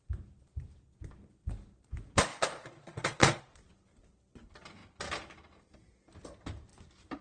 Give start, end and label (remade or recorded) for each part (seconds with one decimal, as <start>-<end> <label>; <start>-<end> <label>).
0.0-2.3 recorded; 2.3-3.4 remade; 3.4-7.2 recorded